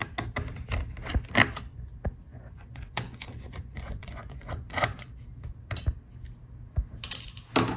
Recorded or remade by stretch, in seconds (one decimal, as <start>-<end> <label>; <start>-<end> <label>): 0.0-2.3 recorded; 2.3-5.2 remade; 5.2-7.8 recorded